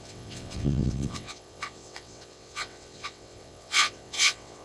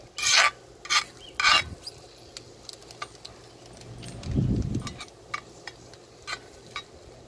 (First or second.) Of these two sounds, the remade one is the first